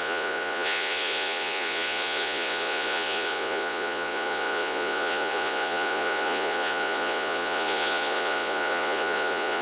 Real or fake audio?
fake